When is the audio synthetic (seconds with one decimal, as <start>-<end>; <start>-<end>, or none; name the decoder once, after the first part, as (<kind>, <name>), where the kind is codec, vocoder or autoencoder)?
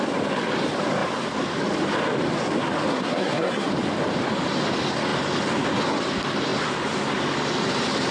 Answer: 2.9-3.7 (codec, SNAC)